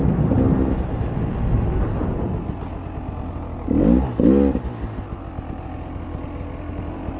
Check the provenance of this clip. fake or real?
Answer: real